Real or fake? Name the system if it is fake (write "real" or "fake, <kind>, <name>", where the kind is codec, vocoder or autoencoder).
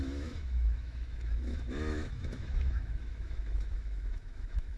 fake, autoencoder, DAC-VAE